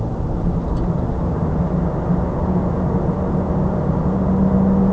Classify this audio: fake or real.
real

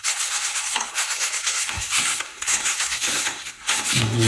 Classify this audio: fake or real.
fake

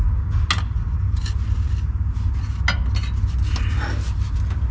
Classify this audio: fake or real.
real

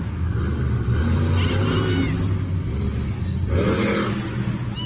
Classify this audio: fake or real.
real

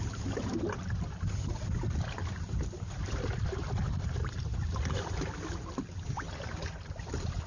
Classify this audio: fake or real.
real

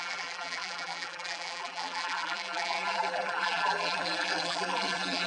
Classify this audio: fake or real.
fake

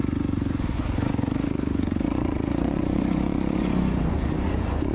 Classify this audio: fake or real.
fake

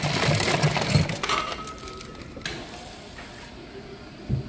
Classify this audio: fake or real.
real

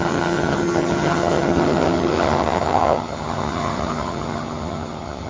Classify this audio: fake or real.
fake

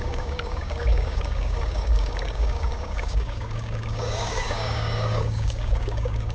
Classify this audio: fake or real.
fake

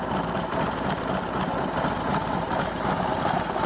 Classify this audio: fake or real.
real